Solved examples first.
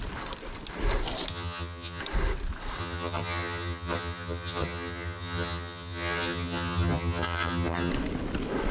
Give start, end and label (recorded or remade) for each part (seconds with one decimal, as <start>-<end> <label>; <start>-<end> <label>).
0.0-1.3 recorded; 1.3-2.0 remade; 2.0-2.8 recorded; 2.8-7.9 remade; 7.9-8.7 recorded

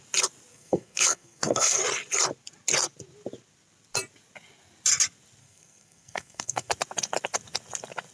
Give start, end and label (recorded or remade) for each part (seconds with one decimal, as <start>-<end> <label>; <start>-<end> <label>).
0.0-0.5 recorded; 0.5-1.8 remade; 1.8-5.4 recorded; 5.4-6.7 remade; 6.7-8.1 recorded

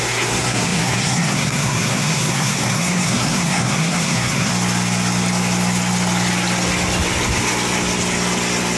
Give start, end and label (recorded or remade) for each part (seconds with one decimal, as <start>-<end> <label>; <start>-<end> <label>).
0.0-4.5 remade; 4.5-8.8 recorded

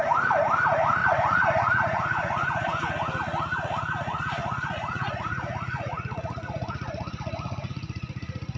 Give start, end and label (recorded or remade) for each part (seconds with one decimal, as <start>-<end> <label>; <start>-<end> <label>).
0.0-1.0 recorded; 1.0-2.8 remade; 2.8-4.4 recorded; 4.4-8.6 remade